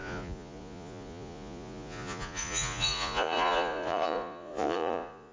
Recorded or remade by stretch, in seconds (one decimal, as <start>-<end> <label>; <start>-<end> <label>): 0.0-5.3 remade